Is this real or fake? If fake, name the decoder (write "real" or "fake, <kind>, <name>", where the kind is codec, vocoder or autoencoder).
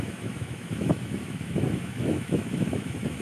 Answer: fake, autoencoder, DAC-VAE